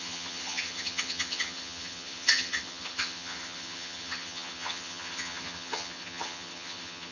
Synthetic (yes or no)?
yes